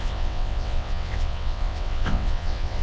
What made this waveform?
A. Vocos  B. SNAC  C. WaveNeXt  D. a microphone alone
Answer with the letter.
C